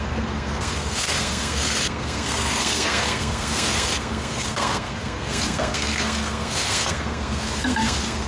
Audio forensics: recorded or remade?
remade